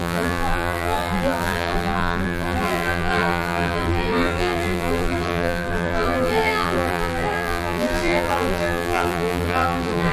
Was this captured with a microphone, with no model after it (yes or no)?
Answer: no